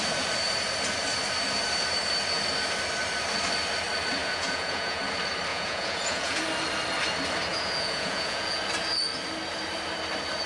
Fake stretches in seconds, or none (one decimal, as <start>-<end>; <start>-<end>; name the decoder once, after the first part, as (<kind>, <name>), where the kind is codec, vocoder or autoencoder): 4.2-5.0 (vocoder, Vocos); 5.5-6.4; 7.5-8.6